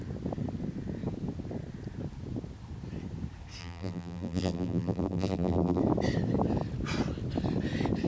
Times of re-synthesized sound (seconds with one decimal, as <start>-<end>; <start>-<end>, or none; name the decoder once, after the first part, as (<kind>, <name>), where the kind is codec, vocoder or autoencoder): 3.6-5.8 (vocoder, BigVGAN v2)

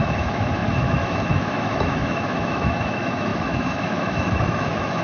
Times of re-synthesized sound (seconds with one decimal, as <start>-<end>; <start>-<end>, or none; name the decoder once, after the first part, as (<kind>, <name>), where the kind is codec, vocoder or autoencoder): 0.0-5.0 (autoencoder, DAC-VAE)

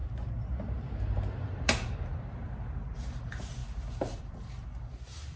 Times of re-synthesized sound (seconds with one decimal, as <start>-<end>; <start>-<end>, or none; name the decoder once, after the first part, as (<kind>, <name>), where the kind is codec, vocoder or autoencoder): 1.4-5.4 (vocoder, BigVGAN v2)

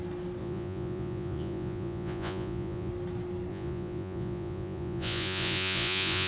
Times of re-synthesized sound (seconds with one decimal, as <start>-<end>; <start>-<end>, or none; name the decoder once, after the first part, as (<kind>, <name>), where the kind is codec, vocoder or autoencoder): 0.4-2.9 (vocoder, Vocos); 3.5-6.3

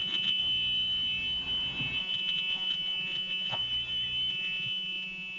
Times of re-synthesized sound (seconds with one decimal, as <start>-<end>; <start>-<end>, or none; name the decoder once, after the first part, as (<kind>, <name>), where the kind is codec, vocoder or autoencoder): 0.0-0.4 (vocoder, Vocos); 2.0-3.6; 4.3-5.4

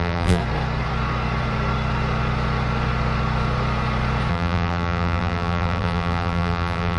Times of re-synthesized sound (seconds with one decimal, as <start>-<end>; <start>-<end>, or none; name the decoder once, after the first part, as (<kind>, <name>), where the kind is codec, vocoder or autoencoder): 0.0-0.4 (vocoder, BigVGAN v2); 4.3-7.0